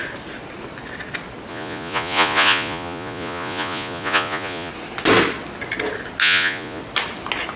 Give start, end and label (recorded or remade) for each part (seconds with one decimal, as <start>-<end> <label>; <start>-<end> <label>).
0.0-1.5 recorded; 1.5-4.7 remade; 4.7-6.2 recorded; 6.2-6.8 remade; 6.8-7.6 recorded